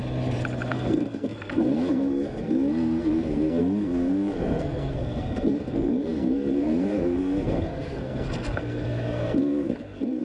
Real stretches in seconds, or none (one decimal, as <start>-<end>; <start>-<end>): 0.0-0.7